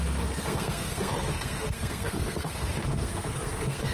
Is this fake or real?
fake